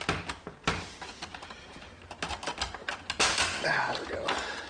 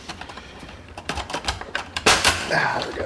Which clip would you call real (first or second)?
first